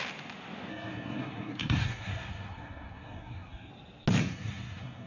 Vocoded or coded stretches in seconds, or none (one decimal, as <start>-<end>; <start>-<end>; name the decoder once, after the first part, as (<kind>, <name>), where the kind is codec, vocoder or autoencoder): 0.7-3.7 (codec, SNAC); 4.2-5.1

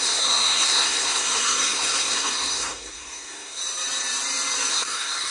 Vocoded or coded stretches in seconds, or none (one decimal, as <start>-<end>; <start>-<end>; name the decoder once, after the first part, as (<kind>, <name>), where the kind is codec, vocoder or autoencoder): 0.0-3.6 (codec, SNAC); 4.7-5.3

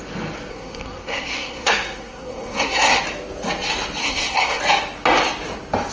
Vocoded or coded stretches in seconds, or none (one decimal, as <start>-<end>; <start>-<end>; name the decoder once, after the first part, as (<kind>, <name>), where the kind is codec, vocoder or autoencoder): 0.5-3.0 (codec, SNAC); 4.0-4.6

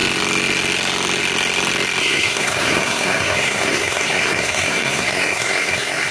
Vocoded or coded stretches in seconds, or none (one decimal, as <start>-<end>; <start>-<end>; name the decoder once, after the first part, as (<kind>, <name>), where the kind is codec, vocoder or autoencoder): 2.0-6.1 (codec, SNAC)